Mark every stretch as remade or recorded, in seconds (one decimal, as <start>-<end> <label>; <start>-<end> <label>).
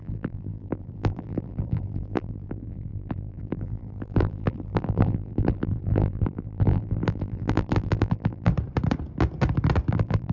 0.0-8.5 remade; 8.5-9.9 recorded; 9.9-10.3 remade